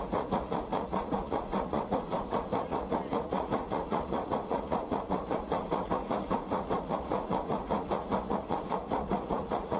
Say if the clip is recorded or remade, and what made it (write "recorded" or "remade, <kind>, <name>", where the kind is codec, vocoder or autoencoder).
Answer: remade, vocoder, Vocos